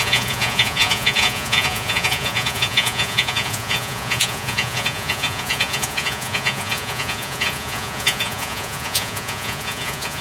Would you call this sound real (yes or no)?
no